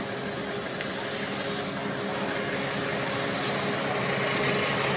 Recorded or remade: recorded